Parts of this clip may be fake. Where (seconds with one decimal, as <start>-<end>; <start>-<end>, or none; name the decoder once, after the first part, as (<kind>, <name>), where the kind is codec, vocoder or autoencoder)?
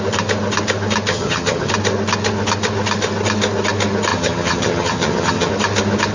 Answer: 1.1-1.7 (vocoder, HiFi-GAN); 4.1-5.5